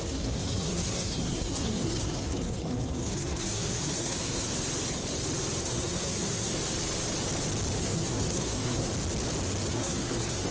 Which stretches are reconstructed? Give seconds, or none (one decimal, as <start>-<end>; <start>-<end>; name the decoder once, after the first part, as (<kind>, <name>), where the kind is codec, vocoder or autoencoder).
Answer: 0.0-4.5 (codec, SNAC); 5.6-6.5; 7.8-8.9; 9.7-10.5